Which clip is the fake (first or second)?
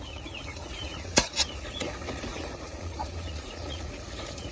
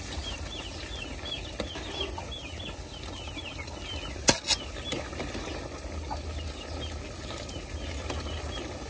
first